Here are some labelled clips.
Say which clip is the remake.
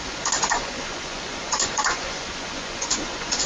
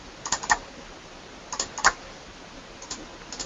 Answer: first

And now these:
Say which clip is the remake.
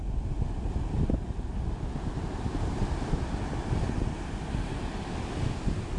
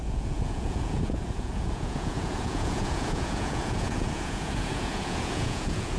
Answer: second